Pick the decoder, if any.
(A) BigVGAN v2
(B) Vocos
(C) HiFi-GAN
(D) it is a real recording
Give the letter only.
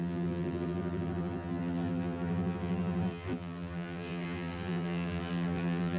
A